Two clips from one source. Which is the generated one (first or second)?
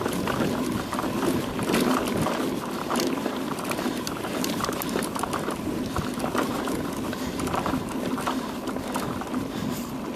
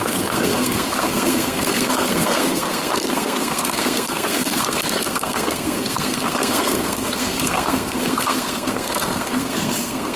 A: second